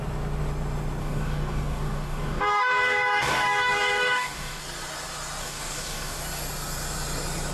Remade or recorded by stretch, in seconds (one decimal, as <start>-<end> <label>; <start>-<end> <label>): 0.0-1.0 recorded; 1.0-4.6 remade; 4.6-5.4 recorded; 5.4-6.2 remade; 6.2-7.5 recorded